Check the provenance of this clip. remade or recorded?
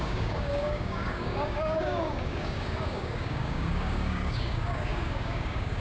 remade